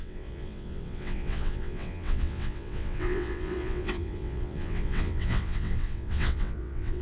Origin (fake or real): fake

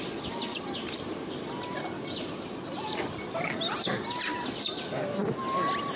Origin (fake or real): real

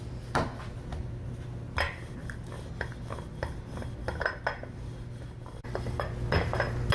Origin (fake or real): real